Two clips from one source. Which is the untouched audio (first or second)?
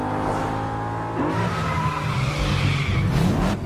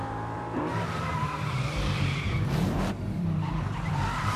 first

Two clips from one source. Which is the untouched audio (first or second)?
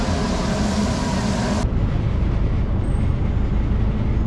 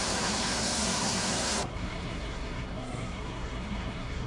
first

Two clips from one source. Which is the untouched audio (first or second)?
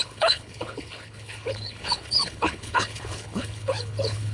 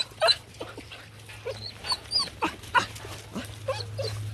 second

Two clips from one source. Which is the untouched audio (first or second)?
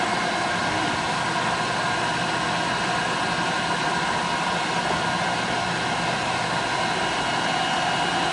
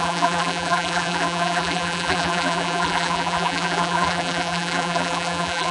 first